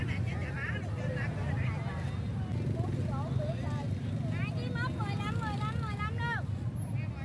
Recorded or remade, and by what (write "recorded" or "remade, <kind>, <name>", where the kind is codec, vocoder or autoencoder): recorded